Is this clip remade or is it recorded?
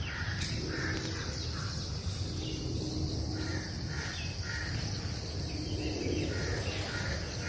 recorded